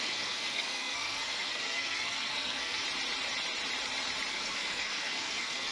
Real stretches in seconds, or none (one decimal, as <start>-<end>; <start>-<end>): 2.8-4.3